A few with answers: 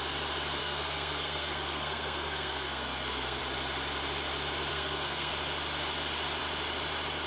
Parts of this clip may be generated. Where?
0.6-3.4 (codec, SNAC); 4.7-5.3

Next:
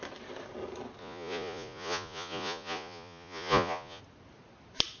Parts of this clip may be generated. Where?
1.0-4.0 (vocoder, Vocos)

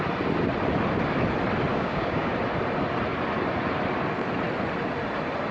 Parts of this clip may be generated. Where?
1.7-2.3 (codec, DAC)

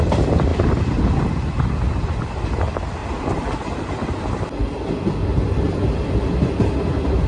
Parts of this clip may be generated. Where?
0.0-0.5 (vocoder, BigVGAN v2); 1.1-3.0

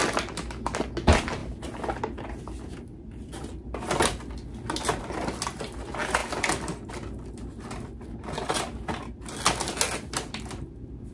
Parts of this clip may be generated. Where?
none

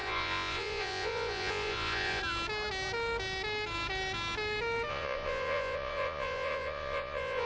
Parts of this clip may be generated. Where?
0.0-2.2 (vocoder, Vocos); 4.9-7.5

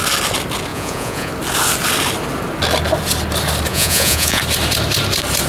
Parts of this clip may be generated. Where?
0.7-1.3 (vocoder, Vocos); 3.7-4.4